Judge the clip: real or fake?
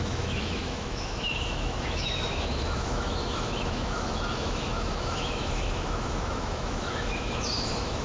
fake